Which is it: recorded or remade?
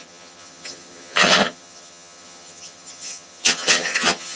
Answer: remade